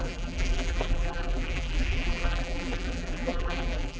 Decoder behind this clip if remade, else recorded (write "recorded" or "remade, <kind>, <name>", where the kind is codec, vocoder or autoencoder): remade, vocoder, BigVGAN v2